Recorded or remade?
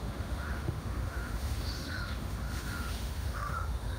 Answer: remade